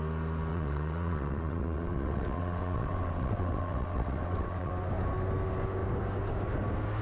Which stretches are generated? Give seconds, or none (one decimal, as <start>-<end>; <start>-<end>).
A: 0.5-4.7

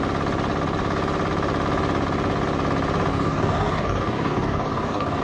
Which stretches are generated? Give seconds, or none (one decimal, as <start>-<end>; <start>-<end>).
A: 3.1-5.2